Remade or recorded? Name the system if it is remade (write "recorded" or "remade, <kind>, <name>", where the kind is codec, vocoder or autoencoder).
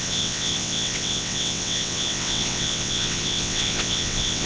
remade, vocoder, WaveNeXt